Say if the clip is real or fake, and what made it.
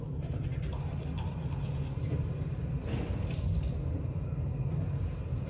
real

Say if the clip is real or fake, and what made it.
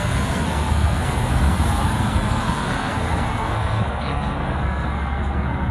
fake, codec, SNAC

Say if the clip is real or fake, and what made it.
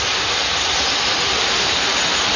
real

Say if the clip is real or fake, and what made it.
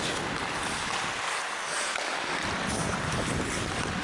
real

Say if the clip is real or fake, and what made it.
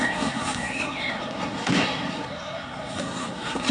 fake, codec, SNAC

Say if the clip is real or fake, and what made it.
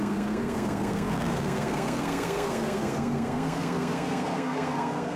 fake, codec, SNAC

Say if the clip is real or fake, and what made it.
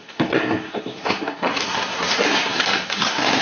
fake, codec, SNAC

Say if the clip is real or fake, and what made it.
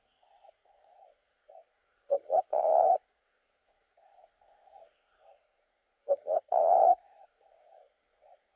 fake, codec, SNAC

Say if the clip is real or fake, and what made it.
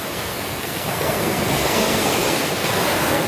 fake, codec, SNAC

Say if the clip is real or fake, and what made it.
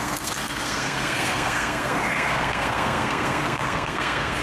fake, codec, SNAC